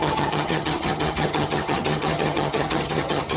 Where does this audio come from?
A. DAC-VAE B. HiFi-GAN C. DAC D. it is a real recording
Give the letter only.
B